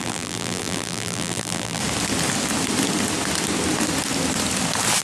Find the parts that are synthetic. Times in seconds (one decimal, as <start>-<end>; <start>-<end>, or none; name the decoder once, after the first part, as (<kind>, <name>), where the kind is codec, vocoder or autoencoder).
0.0-1.8 (vocoder, BigVGAN v2)